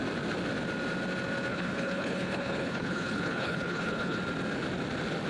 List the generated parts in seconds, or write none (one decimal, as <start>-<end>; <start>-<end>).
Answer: 1.5-4.2

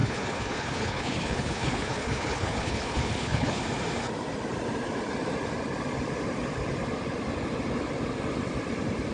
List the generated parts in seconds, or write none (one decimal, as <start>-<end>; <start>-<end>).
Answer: 0.0-3.6

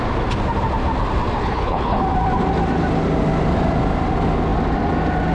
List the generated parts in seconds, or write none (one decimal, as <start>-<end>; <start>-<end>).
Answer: 1.4-2.0

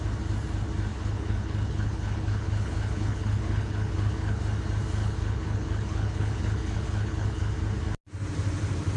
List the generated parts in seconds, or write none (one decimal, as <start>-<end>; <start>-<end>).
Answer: 0.9-4.4; 5.0-7.5

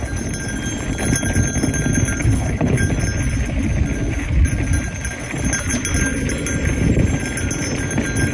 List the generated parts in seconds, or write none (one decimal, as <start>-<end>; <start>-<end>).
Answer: 2.2-2.8

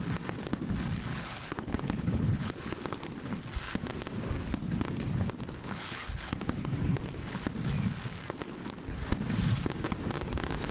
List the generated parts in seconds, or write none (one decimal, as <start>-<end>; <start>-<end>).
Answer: 1.1-2.7; 5.6-7.0